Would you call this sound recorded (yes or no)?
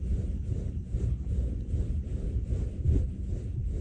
yes